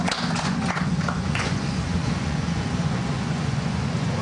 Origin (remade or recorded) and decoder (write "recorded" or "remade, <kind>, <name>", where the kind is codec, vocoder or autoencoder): remade, vocoder, Vocos